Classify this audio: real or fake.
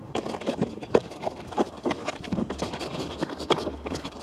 fake